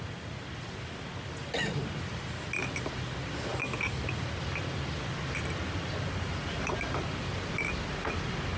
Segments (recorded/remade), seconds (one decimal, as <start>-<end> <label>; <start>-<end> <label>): 0.0-8.6 recorded